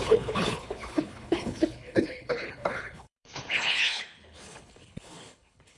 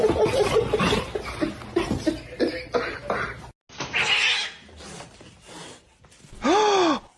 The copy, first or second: first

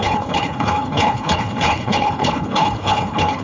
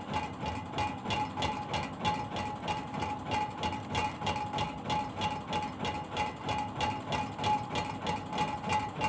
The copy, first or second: first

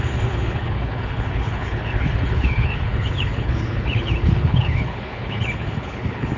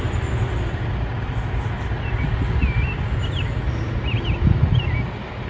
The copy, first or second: first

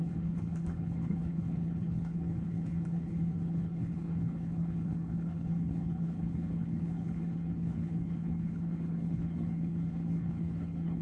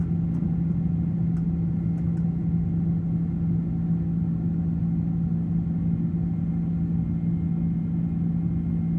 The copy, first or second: first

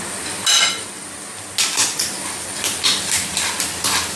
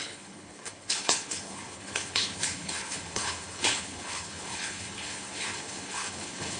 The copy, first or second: second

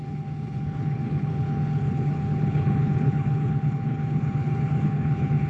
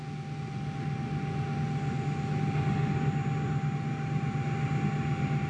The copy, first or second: first